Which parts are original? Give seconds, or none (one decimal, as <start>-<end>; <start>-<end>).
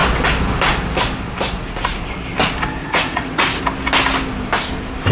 0.0-2.8; 3.6-5.1